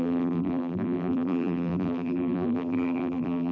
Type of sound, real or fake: fake